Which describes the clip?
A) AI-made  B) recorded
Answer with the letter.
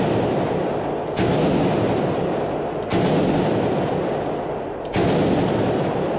B